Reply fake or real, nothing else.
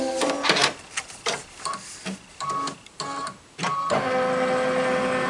real